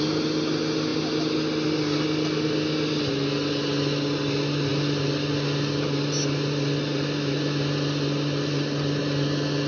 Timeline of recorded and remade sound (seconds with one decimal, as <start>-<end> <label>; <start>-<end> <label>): 0.0-9.7 recorded